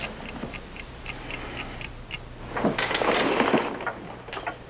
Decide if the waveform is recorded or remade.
recorded